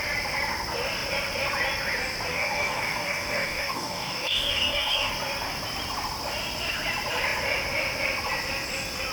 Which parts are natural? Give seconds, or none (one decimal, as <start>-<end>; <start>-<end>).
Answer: 0.0-2.3; 5.1-9.1